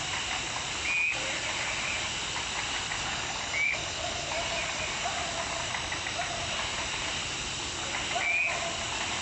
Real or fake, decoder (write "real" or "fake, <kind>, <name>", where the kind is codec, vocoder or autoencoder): real